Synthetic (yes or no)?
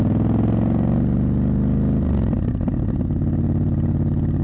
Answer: no